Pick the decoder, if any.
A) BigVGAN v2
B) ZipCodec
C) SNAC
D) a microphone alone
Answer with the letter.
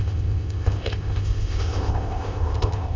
B